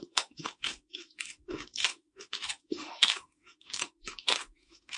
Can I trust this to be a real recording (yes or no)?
no